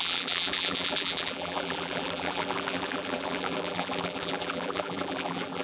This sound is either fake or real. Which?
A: fake